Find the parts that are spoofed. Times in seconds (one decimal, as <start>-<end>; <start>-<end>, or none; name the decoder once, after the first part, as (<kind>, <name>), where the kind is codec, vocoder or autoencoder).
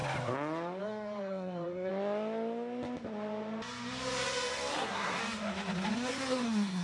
0.8-1.9 (codec, SNAC); 4.7-5.2; 5.9-6.8